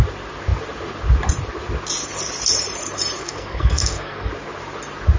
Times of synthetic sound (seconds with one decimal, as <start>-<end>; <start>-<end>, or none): 3.2-4.3